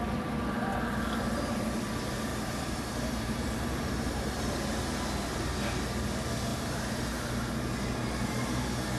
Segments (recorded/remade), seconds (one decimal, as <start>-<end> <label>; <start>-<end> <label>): 0.0-2.3 recorded; 2.3-4.4 remade; 4.4-6.5 recorded; 6.5-7.7 remade; 7.7-9.0 recorded